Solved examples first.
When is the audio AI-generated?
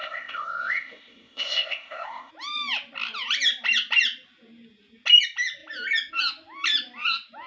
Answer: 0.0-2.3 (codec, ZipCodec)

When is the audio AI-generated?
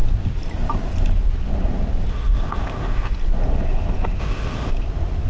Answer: 2.1-3.1 (codec, ZipCodec); 4.2-4.7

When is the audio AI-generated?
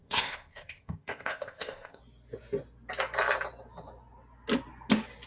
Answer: 0.0-2.0 (codec, ZipCodec)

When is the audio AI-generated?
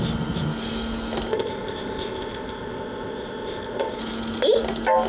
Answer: 1.3-4.0 (codec, ZipCodec)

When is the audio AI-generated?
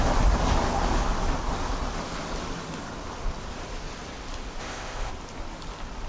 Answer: 4.6-5.1 (codec, ZipCodec)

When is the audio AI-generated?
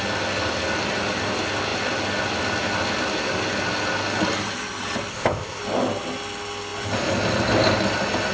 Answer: 5.1-5.6 (codec, ZipCodec)